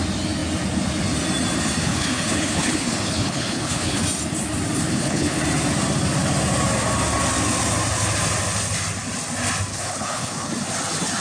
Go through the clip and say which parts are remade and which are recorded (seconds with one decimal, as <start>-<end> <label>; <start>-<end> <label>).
0.0-1.8 recorded; 1.8-4.0 remade; 4.0-4.9 recorded; 4.9-5.4 remade; 5.4-9.7 recorded; 9.7-10.5 remade; 10.5-11.2 recorded